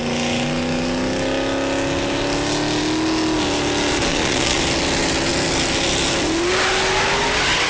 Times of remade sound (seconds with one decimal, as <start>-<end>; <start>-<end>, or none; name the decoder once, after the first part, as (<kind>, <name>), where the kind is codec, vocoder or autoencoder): 4.1-4.6 (vocoder, Vocos)